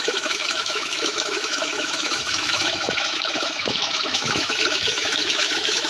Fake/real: fake